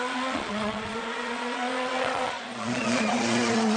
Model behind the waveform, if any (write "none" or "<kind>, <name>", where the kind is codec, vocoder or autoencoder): vocoder, Vocos